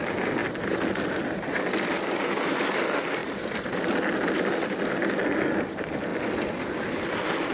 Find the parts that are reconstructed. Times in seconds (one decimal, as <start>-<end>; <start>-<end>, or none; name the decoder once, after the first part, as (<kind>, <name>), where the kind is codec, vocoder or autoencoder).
3.2-3.8 (vocoder, BigVGAN v2)